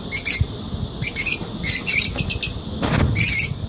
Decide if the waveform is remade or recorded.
recorded